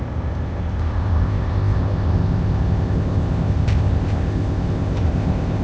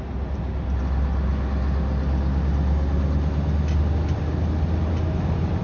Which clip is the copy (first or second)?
first